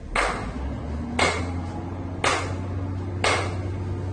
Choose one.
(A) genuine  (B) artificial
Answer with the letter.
A